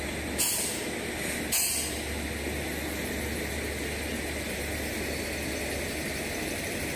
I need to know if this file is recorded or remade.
recorded